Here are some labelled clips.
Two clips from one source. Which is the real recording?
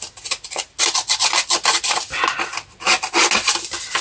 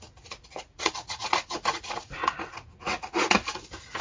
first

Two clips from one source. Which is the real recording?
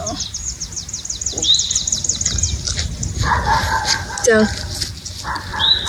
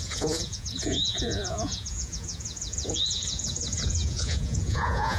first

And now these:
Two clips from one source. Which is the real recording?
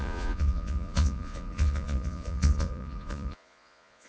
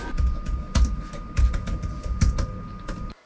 second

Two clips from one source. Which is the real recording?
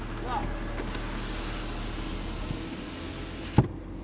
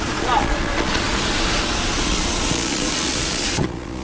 first